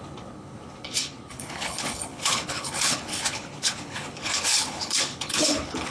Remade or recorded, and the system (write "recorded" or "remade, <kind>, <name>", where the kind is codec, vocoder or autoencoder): remade, codec, HILCodec